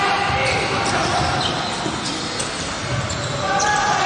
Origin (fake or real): real